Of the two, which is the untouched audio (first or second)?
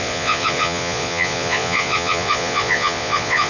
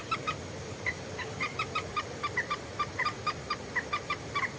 second